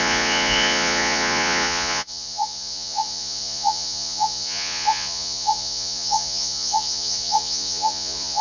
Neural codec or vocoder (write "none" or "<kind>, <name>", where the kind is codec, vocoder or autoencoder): vocoder, Vocos